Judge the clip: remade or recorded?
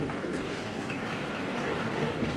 remade